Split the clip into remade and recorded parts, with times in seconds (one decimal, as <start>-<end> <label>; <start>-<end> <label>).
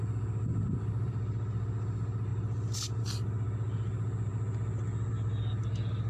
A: 0.0-6.1 recorded